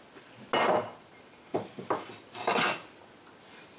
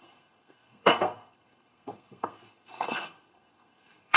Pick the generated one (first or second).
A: second